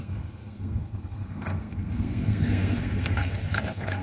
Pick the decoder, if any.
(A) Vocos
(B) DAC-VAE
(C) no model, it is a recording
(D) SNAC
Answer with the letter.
D